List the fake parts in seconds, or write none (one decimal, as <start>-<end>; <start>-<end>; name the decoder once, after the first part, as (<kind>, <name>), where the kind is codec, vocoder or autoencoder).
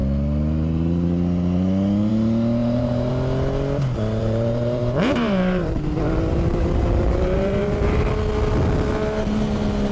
2.6-3.1 (vocoder, BigVGAN v2); 4.2-8.1